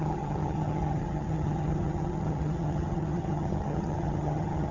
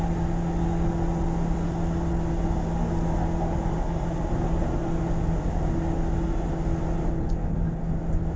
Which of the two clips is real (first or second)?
second